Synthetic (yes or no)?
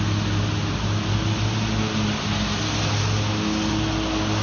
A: no